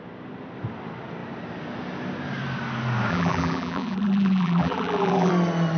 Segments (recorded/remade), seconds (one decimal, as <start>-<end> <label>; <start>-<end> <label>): 0.0-3.1 recorded; 3.1-5.3 remade; 5.3-5.8 recorded